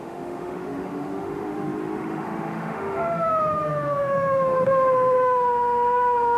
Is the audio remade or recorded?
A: remade